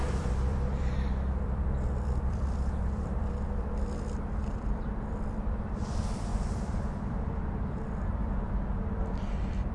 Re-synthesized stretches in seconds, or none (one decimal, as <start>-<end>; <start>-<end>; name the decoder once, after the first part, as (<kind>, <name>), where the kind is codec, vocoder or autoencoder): 0.0-8.2 (vocoder, BigVGAN v2)